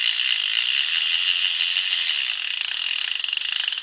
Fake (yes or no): no